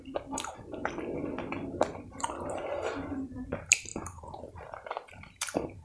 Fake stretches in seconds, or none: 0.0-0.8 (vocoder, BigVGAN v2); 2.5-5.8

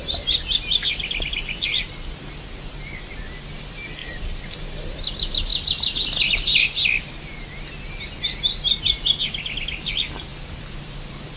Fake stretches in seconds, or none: 4.0-5.0 (vocoder, BigVGAN v2); 10.3-11.4

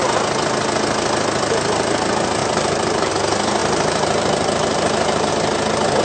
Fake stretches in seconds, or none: 2.4-3.1 (vocoder, BigVGAN v2); 3.6-5.3

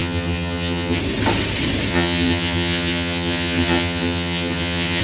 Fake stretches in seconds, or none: 0.0-1.0 (vocoder, HiFi-GAN); 1.9-5.0